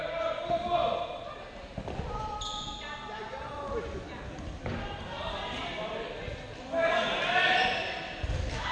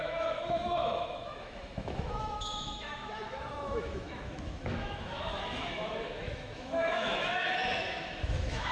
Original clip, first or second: first